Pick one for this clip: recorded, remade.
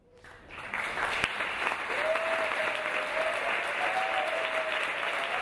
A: recorded